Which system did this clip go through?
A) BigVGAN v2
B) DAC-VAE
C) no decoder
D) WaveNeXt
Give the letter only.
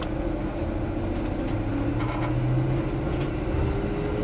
C